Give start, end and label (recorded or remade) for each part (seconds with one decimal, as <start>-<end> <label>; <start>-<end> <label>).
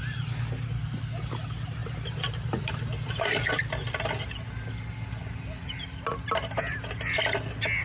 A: 0.0-7.8 recorded